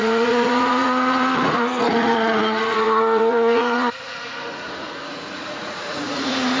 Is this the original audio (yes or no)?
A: no